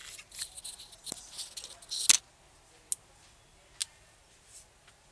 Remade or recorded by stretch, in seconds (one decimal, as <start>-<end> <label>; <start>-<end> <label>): 0.0-5.1 recorded